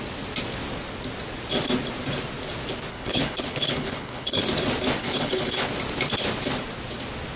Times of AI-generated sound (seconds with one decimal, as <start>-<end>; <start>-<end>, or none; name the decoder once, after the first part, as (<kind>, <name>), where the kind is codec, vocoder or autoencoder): 2.9-4.4 (codec, HILCodec); 5.0-5.7